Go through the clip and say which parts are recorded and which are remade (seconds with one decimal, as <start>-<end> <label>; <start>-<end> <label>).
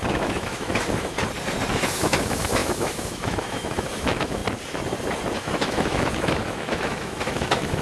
0.0-1.2 remade; 1.2-1.7 recorded; 1.7-4.4 remade; 4.4-5.4 recorded; 5.4-7.8 remade